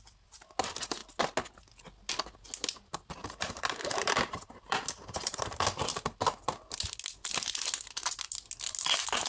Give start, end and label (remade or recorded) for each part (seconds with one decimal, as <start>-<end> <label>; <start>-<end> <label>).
0.0-3.2 recorded; 3.2-5.4 remade; 5.4-9.3 recorded